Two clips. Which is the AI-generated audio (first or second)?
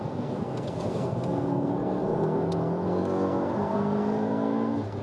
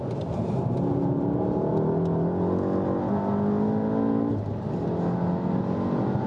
first